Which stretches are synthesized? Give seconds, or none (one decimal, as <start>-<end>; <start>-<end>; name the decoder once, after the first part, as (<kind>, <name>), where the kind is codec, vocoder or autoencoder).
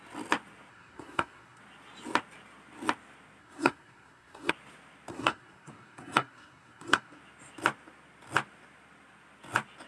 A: 0.7-1.6 (codec, SNAC); 3.4-4.5; 5.1-7.2